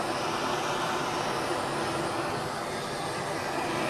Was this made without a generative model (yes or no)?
yes